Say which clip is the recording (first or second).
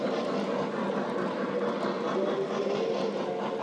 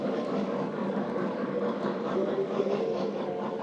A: first